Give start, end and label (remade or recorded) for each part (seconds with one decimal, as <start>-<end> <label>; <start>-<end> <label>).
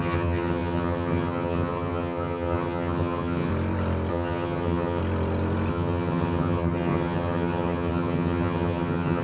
0.0-3.5 remade; 3.5-4.1 recorded; 4.1-5.0 remade; 5.0-5.7 recorded; 5.7-9.2 remade